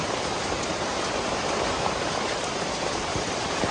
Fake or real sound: fake